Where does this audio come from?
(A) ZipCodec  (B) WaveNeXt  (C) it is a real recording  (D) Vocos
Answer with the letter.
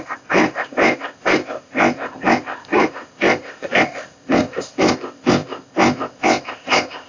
A